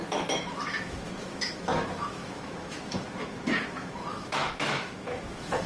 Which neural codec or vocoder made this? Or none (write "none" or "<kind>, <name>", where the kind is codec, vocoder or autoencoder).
autoencoder, DAC-VAE